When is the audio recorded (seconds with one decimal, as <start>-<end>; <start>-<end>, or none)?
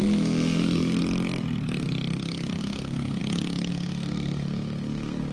1.0-2.6; 3.2-3.7